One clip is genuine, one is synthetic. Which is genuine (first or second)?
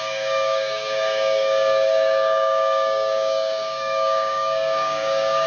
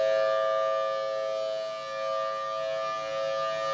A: second